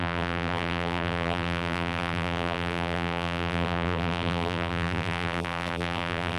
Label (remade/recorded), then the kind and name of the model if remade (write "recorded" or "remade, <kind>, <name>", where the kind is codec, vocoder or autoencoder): remade, vocoder, BigVGAN v2